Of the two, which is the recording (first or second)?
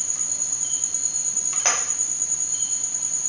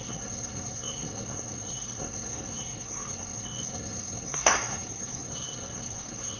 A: first